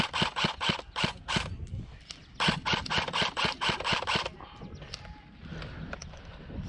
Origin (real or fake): real